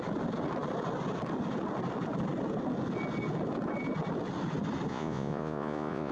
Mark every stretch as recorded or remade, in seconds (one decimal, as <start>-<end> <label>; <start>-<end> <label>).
0.0-4.9 recorded; 4.9-6.1 remade